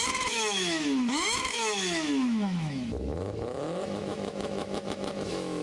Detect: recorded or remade remade